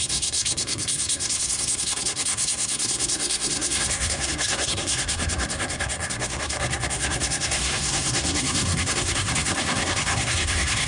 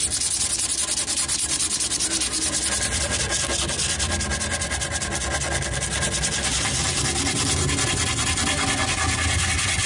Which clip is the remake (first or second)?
first